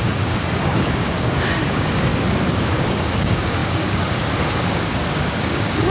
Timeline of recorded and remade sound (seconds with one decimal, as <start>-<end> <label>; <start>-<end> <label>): 0.0-2.1 remade; 2.1-2.6 recorded; 2.6-5.9 remade